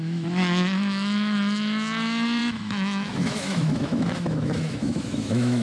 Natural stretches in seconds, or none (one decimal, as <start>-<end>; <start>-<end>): none